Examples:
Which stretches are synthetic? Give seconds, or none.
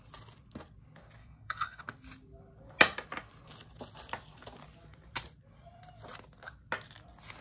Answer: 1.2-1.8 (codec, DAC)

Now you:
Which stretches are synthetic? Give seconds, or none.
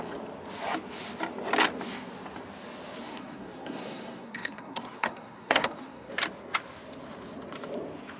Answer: 3.0-6.1 (codec, SNAC)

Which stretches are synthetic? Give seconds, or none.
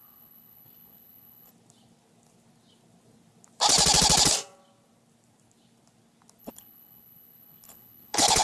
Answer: 0.0-1.5 (codec, HILCodec); 6.4-8.4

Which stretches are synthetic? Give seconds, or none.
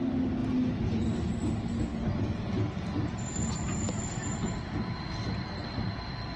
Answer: none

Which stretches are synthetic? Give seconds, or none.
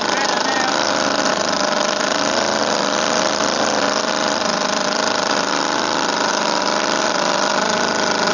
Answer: 0.0-1.4 (vocoder, BigVGAN v2); 4.0-6.3; 7.0-7.5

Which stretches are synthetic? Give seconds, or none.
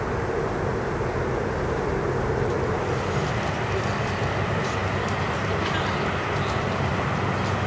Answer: none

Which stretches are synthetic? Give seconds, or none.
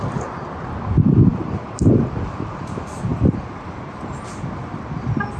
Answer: 1.3-2.3 (vocoder, BigVGAN v2)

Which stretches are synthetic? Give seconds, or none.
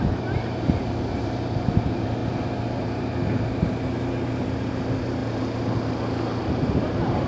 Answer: 0.0-5.2 (vocoder, BigVGAN v2); 6.4-7.3